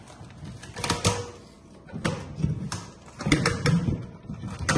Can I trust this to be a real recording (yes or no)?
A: yes